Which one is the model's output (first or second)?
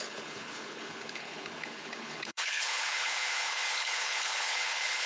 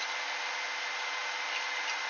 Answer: first